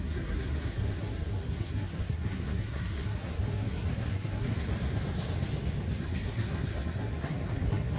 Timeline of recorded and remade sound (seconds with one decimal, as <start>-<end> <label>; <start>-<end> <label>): 0.0-4.7 remade; 4.7-6.0 recorded; 6.0-8.0 remade